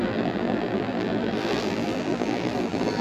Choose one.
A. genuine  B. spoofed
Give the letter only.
B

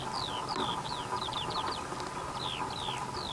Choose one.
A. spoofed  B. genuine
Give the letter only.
B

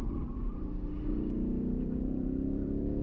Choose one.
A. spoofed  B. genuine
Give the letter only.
A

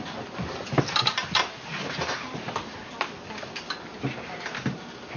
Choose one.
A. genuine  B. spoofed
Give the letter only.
A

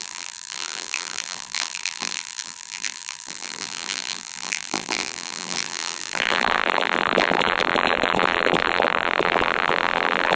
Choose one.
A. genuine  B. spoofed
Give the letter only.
B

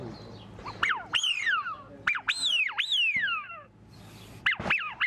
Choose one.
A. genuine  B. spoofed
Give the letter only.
A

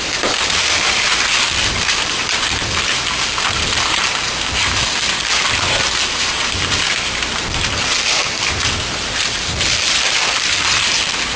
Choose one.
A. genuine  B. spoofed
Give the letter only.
B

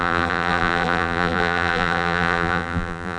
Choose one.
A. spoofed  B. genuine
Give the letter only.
A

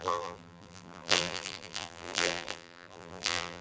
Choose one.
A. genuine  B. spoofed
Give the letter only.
B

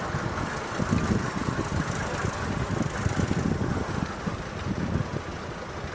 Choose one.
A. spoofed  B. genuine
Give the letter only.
B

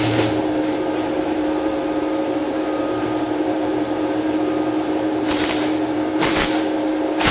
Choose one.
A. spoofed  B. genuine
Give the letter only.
A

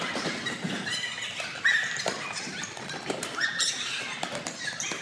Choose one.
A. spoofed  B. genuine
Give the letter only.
A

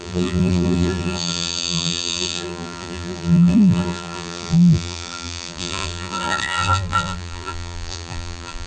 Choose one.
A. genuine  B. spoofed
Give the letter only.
B